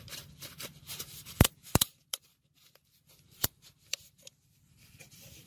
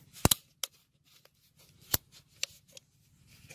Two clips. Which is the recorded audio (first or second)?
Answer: second